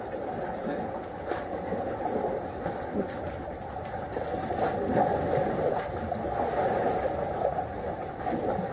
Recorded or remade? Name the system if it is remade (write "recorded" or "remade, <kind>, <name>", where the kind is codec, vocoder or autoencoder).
recorded